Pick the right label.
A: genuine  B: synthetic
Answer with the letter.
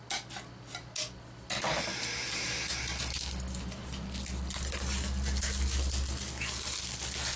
A